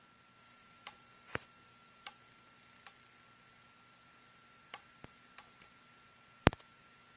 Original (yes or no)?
yes